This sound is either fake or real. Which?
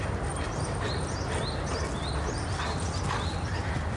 real